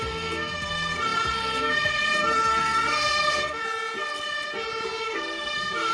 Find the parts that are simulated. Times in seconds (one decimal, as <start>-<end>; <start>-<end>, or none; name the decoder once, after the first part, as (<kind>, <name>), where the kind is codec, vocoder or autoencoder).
0.0-3.6 (codec, SNAC); 5.0-5.9